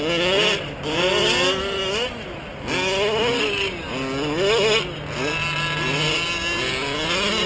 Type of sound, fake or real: real